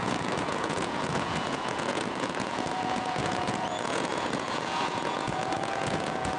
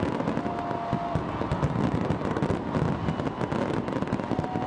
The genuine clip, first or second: second